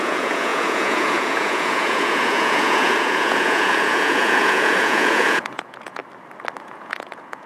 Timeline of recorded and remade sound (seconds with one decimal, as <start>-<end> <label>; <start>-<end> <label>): 0.0-6.0 remade; 6.0-6.6 recorded; 6.6-7.5 remade